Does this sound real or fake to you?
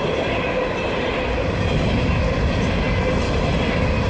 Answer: real